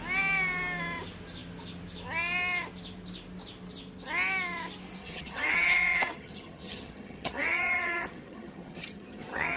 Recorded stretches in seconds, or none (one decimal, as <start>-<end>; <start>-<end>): 0.0-5.0